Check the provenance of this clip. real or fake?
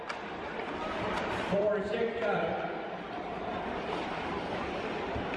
fake